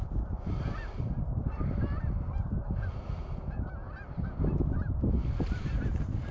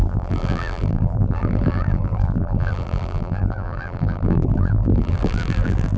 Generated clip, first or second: second